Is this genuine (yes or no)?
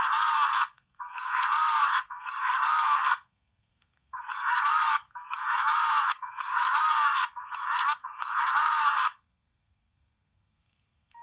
no